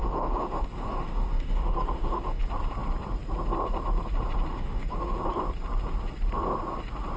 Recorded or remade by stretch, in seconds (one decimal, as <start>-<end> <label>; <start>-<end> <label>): 0.0-2.4 remade; 2.4-4.5 recorded; 4.5-5.2 remade; 5.2-7.2 recorded